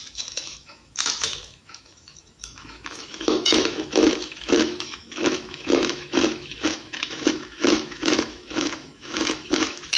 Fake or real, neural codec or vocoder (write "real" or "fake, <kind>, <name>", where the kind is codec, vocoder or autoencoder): fake, autoencoder, DAC-VAE